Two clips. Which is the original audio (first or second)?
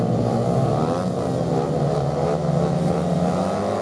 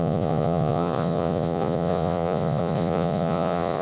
first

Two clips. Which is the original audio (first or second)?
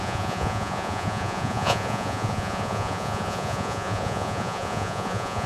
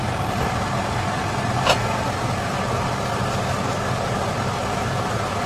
second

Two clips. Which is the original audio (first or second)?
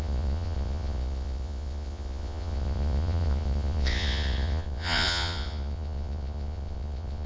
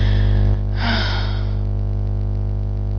second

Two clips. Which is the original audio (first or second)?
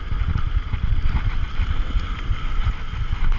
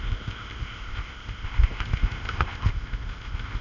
first